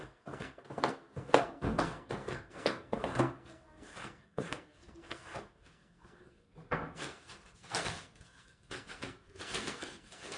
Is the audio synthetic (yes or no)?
yes